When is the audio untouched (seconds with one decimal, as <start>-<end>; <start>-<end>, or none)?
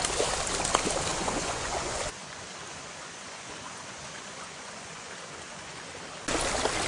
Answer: 0.0-1.1; 2.4-2.8; 5.9-6.9